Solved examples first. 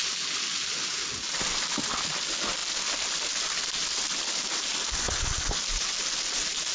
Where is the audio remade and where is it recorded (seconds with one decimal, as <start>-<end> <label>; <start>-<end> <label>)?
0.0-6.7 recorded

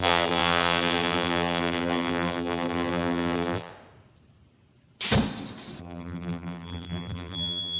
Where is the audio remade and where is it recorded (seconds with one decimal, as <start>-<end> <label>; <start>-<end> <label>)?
0.0-3.7 remade; 3.7-5.8 recorded; 5.8-7.8 remade

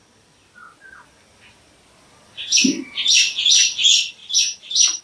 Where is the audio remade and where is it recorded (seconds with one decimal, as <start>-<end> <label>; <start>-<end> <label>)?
0.0-0.6 remade; 0.6-3.6 recorded; 3.6-5.0 remade